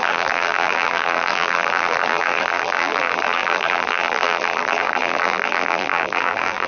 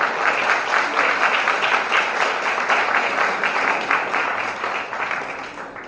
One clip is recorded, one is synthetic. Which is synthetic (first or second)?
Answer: first